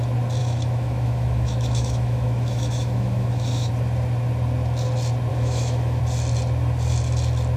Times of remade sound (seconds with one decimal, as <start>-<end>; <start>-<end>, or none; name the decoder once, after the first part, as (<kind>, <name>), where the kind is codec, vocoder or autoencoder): 0.4-3.7 (autoencoder, DAC-VAE); 5.3-6.0